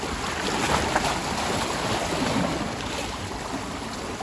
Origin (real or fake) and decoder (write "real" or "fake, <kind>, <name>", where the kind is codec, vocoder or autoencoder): real